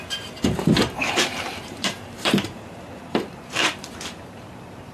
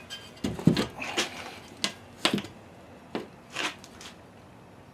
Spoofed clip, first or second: first